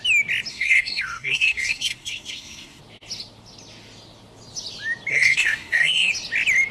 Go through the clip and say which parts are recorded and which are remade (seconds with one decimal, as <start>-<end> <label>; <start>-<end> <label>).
0.0-0.5 recorded; 0.5-2.8 remade; 2.8-5.1 recorded; 5.1-6.1 remade; 6.1-6.7 recorded

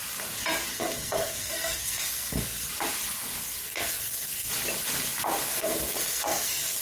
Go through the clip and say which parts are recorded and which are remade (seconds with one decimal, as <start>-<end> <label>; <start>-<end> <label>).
0.0-0.7 recorded; 0.7-2.7 remade; 2.7-3.4 recorded; 3.4-4.5 remade; 4.5-5.5 recorded; 5.5-6.8 remade

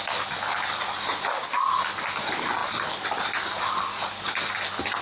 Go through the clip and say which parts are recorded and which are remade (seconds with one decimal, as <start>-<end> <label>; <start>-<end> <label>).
0.0-5.0 recorded

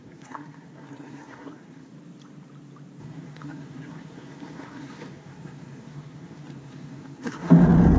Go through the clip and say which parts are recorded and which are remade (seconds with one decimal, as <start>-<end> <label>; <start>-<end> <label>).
0.0-1.9 remade; 1.9-3.0 recorded; 3.0-7.5 remade; 7.5-8.0 recorded

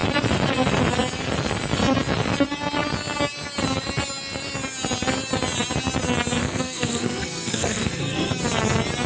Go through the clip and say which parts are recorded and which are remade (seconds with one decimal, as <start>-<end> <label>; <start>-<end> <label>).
0.0-6.4 recorded; 6.4-8.3 remade; 8.3-9.1 recorded

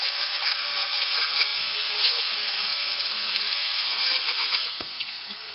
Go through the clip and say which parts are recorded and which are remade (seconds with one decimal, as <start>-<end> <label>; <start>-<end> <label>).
0.0-5.5 remade